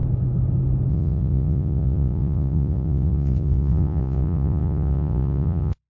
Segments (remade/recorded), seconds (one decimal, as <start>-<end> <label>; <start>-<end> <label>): 0.0-0.9 recorded; 0.9-5.9 remade